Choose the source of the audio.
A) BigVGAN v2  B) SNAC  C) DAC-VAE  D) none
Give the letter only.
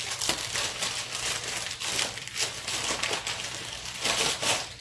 A